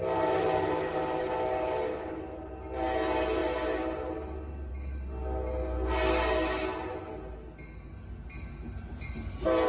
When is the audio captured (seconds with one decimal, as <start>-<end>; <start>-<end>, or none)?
0.0-9.7